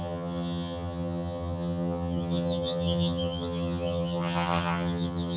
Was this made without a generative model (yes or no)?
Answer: no